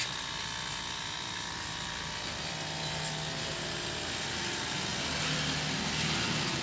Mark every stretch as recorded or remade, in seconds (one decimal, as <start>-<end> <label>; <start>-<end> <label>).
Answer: 0.0-6.6 recorded